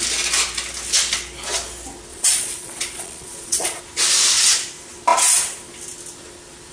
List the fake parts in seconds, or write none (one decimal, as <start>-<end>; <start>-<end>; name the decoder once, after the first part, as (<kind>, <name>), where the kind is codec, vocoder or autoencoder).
2.1-3.8 (vocoder, Vocos)